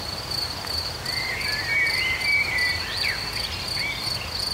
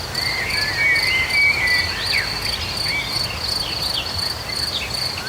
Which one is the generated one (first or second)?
first